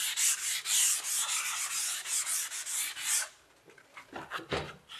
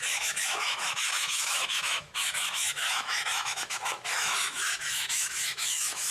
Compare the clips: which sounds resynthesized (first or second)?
second